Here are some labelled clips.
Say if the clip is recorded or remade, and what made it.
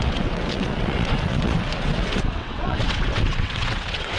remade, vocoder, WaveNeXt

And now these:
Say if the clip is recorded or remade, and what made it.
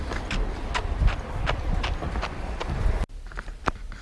recorded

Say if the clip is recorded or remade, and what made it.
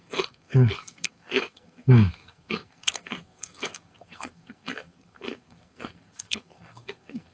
remade, codec, SNAC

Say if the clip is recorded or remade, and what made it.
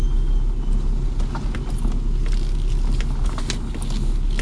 recorded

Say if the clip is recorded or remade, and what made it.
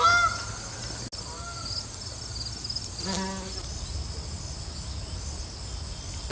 recorded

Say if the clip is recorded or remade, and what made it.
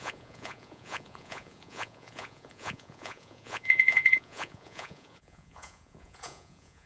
remade, vocoder, Vocos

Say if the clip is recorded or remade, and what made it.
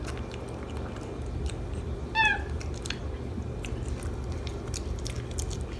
recorded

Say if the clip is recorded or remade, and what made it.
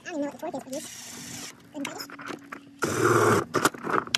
recorded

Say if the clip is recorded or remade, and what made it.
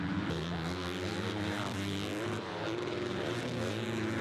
recorded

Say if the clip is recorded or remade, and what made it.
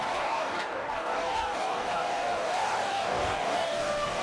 remade, codec, DAC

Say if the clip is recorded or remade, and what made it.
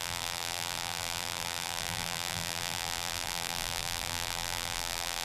remade, vocoder, BigVGAN v2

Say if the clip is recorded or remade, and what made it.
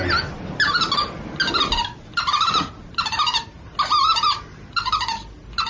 recorded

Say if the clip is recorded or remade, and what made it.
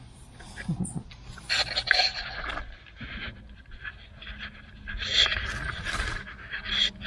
recorded